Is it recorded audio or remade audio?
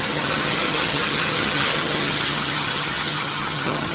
remade